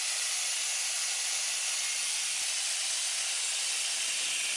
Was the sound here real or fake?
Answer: real